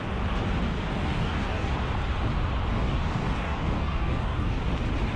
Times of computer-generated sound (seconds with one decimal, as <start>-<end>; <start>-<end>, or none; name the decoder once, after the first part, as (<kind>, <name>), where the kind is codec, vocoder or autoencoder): 0.9-1.7 (codec, DAC); 2.7-4.6